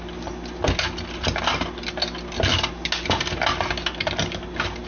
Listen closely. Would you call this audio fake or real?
real